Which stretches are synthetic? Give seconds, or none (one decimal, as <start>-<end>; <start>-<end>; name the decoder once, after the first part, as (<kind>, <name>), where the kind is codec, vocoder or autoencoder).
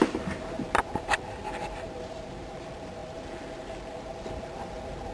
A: 0.0-5.1 (vocoder, BigVGAN v2)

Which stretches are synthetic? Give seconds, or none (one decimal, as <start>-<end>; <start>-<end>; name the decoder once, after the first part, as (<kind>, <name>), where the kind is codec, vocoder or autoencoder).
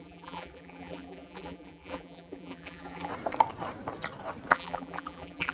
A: 0.0-3.1 (vocoder, BigVGAN v2); 4.5-5.5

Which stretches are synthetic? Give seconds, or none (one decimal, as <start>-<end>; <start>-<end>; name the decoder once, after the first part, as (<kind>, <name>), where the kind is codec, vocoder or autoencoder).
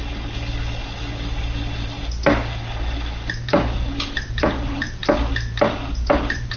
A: 3.4-5.0 (vocoder, BigVGAN v2); 5.6-6.6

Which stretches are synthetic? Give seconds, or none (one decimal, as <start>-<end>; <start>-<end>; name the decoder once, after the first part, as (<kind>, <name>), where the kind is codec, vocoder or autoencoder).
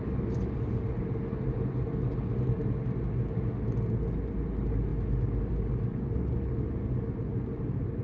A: none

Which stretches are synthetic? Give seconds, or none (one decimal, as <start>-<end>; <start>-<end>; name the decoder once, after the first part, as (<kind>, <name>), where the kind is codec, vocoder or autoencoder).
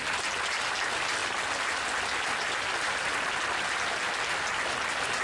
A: none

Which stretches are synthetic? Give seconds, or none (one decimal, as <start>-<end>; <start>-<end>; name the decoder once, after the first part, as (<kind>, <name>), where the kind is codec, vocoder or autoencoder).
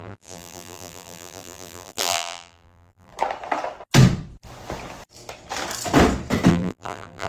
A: 0.0-3.1 (vocoder, BigVGAN v2); 6.5-7.3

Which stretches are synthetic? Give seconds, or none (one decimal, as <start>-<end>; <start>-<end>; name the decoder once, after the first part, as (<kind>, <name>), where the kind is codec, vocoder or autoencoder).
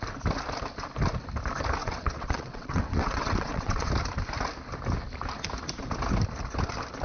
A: 1.8-3.9 (vocoder, WaveNeXt)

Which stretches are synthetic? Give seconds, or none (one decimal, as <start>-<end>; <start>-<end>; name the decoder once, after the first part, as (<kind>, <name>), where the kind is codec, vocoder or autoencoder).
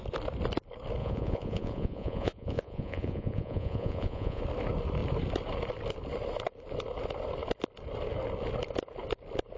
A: 1.0-4.4 (vocoder, Vocos)